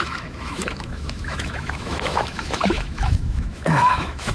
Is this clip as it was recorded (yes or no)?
no